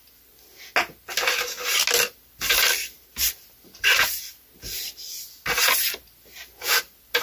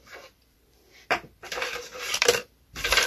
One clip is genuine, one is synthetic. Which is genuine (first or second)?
first